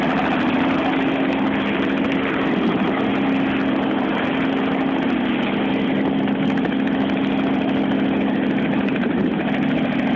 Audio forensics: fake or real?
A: real